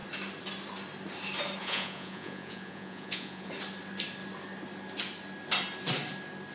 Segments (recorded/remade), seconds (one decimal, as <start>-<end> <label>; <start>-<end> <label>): 0.0-1.6 recorded; 1.6-3.5 remade; 3.5-6.5 recorded